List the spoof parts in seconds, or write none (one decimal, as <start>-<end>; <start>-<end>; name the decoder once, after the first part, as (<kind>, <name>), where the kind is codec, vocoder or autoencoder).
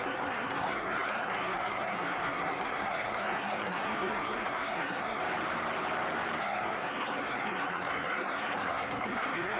0.0-5.2 (codec, SNAC); 6.4-9.6